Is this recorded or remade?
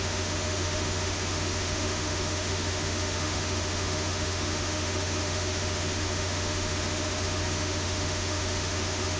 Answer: remade